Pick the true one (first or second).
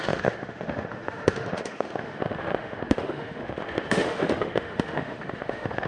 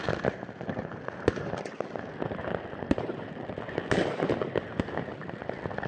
second